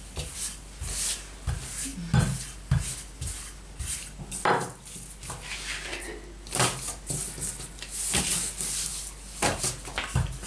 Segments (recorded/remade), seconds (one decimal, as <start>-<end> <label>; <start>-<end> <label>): 0.0-10.5 recorded